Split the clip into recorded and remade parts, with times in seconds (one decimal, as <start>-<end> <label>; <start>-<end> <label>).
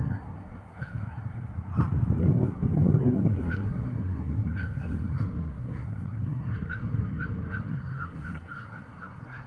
0.0-1.7 remade; 1.7-2.2 recorded; 2.2-9.5 remade